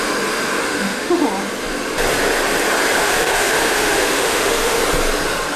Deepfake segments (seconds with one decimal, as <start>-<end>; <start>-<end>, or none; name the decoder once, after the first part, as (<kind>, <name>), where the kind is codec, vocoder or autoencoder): 0.6-1.2 (autoencoder, DAC-VAE); 3.0-4.8